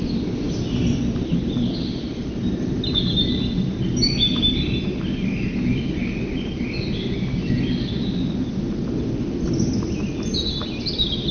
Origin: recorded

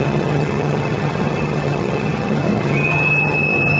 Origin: remade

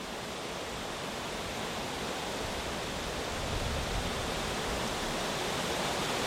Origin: recorded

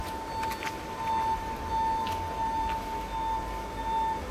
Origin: recorded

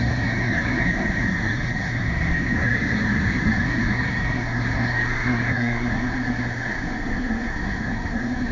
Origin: remade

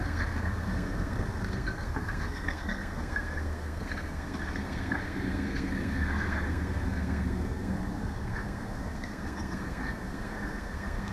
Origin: remade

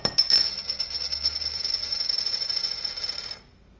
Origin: recorded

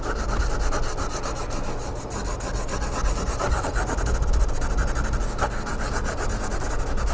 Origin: recorded